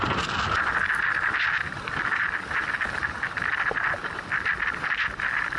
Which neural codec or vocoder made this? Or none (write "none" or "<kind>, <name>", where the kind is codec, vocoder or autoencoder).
none